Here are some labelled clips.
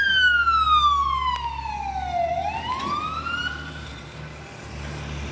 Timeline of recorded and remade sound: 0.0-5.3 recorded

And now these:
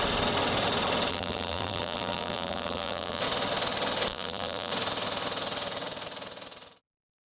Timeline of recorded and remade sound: 0.0-1.1 recorded; 1.1-3.2 remade; 3.2-4.1 recorded; 4.1-4.7 remade; 4.7-7.3 recorded

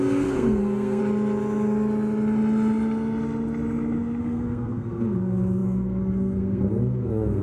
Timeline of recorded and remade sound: 0.0-1.0 remade; 1.0-4.2 recorded; 4.2-7.4 remade

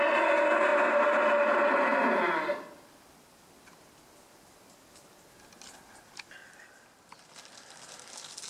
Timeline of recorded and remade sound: 0.0-8.5 recorded